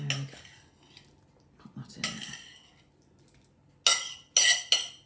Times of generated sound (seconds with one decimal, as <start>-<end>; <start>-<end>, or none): none

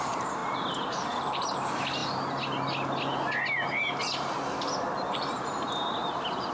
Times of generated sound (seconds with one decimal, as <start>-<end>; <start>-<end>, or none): 0.0-0.4; 0.9-2.0; 4.6-6.5

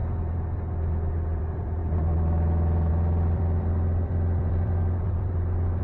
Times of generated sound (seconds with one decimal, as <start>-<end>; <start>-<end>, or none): 1.4-5.8

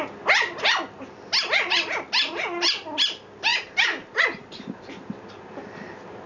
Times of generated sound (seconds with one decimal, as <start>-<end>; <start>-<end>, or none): 3.5-5.0

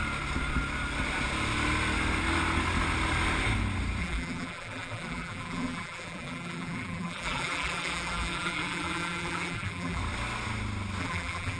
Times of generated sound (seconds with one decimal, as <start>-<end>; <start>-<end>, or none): 4.0-10.0; 11.0-11.6

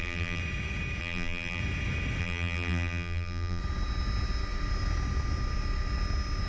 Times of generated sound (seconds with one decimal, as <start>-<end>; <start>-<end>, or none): 0.0-0.4; 1.0-1.6; 2.2-3.6